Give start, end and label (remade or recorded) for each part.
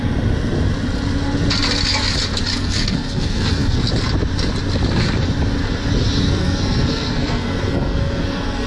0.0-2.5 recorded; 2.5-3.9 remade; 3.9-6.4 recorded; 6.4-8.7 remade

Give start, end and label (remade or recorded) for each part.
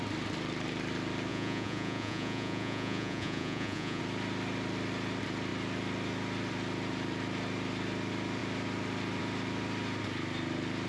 0.0-1.3 recorded; 1.3-4.0 remade; 4.0-10.9 recorded